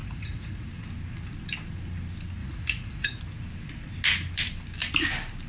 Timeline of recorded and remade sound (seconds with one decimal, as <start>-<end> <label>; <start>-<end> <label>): 0.0-0.7 remade; 0.7-2.4 recorded; 2.4-3.2 remade; 3.2-5.5 recorded